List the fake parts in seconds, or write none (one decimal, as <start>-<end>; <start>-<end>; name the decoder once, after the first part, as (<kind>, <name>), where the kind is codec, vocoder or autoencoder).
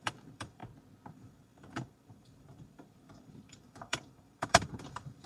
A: 0.0-0.6 (vocoder, BigVGAN v2); 1.1-5.3